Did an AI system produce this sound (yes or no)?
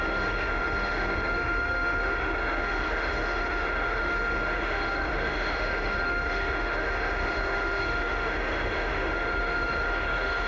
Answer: yes